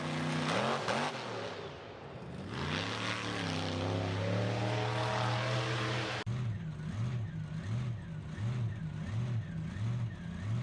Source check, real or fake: real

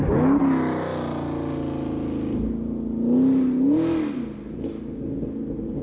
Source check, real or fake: real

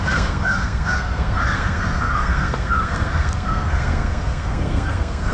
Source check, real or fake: fake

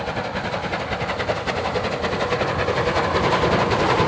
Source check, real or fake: real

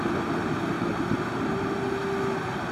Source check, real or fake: real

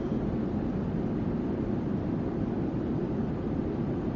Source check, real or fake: real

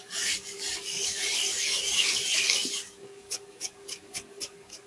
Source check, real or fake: fake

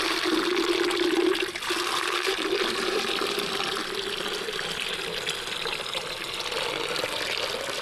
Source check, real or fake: real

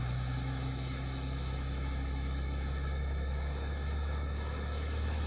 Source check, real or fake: fake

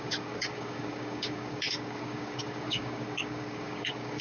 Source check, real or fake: fake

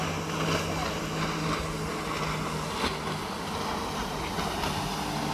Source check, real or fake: real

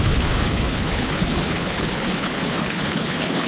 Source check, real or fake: fake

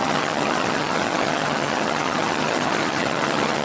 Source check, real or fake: fake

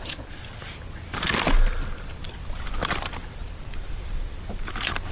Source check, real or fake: real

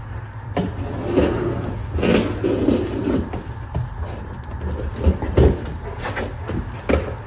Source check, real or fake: real